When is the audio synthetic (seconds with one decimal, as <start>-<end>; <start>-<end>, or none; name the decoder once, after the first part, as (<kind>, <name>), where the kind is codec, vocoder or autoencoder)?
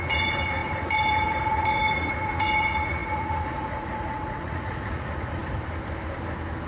0.0-5.4 (vocoder, Vocos)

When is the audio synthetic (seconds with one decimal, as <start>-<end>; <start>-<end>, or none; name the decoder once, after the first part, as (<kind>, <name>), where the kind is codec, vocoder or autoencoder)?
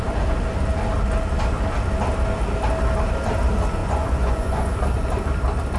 3.8-4.7 (vocoder, Vocos)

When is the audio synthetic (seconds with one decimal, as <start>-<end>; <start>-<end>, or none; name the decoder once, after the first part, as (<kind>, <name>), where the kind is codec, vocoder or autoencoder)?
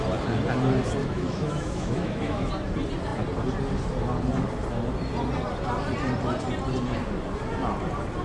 1.0-2.5 (autoencoder, DAC-VAE)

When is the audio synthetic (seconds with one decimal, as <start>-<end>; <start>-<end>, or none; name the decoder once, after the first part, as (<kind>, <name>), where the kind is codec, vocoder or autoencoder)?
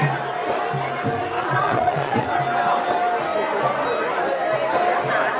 1.4-2.3 (vocoder, Vocos)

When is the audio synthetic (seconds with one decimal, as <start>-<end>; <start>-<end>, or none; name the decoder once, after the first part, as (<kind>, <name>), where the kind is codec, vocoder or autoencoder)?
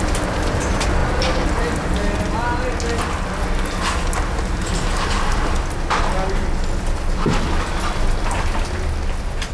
none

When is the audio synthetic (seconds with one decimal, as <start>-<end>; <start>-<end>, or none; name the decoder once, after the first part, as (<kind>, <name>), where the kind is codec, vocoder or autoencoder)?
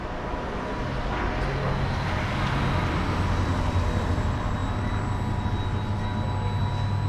none